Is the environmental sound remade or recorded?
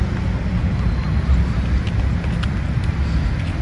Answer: recorded